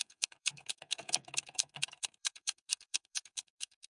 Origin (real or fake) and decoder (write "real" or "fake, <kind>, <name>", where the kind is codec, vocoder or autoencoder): fake, codec, SNAC